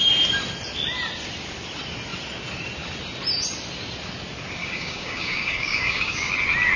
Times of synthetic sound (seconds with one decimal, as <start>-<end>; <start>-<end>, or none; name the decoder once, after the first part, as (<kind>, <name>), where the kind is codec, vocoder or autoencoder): 4.6-6.3 (codec, DAC)